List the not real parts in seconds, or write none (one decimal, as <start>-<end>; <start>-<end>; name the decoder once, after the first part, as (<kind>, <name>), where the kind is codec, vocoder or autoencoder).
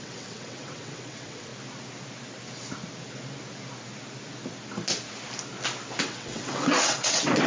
0.0-1.5 (vocoder, WaveNeXt); 6.0-7.5